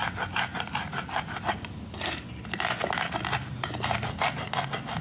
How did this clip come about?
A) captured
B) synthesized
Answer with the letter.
A